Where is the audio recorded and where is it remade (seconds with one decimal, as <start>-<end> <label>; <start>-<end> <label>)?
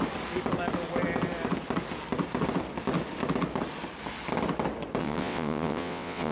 0.0-5.0 recorded; 5.0-6.3 remade